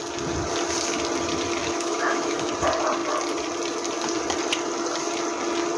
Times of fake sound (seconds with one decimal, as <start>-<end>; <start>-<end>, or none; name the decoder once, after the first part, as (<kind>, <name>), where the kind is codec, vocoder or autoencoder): 1.6-2.5 (autoencoder, DAC-VAE)